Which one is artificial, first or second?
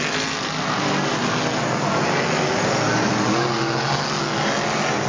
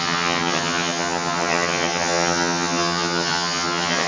second